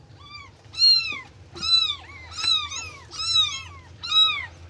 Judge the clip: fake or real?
real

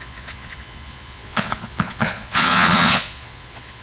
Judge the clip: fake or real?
fake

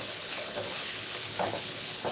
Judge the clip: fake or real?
fake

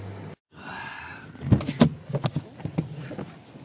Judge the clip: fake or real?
real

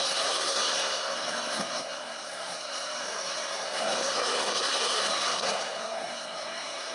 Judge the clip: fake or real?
fake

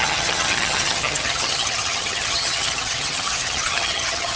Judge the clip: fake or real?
fake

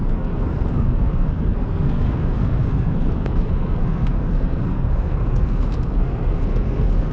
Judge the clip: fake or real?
fake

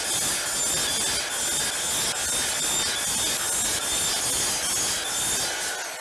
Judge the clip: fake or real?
real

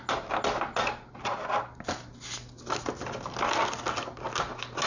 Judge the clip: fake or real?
real